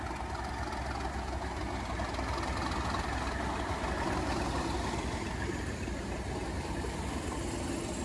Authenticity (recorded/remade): recorded